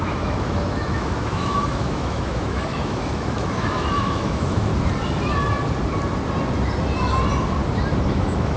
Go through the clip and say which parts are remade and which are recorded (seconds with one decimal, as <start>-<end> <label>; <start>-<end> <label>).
0.0-4.7 remade; 4.7-8.1 recorded; 8.1-8.6 remade